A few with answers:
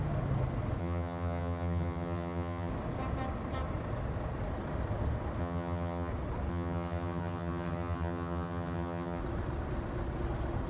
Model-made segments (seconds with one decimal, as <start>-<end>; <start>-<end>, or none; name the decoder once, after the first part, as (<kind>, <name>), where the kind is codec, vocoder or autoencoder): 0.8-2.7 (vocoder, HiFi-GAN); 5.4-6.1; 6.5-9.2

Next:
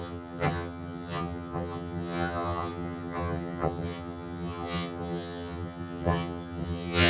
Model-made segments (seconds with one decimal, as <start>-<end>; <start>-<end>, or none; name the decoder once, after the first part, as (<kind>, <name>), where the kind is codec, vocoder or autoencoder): 0.0-7.1 (vocoder, HiFi-GAN)

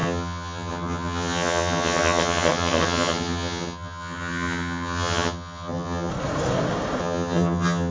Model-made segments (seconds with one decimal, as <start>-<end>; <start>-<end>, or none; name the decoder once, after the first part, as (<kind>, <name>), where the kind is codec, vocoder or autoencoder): 0.0-6.1 (vocoder, HiFi-GAN); 7.0-7.9